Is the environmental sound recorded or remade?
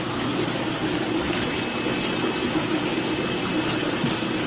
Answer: recorded